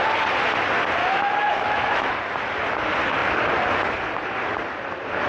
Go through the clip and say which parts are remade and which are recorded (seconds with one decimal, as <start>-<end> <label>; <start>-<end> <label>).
0.0-1.0 recorded; 1.0-2.1 remade; 2.1-5.3 recorded